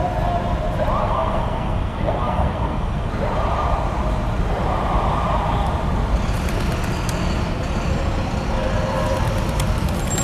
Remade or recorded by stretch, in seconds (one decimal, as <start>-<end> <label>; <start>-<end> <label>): 0.0-1.0 recorded; 1.0-3.1 remade; 3.1-10.2 recorded